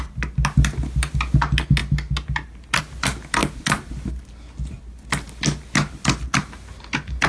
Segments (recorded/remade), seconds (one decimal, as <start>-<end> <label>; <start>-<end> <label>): 0.0-7.3 recorded